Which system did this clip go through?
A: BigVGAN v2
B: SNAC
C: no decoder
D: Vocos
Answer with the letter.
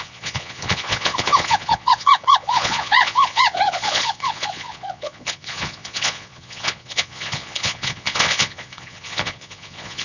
D